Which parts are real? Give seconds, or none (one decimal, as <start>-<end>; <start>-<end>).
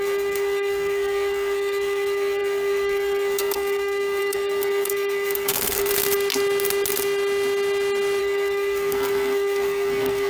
5.9-8.2